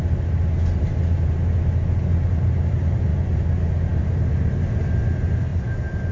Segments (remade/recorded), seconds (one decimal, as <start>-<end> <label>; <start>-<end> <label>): 0.0-6.1 recorded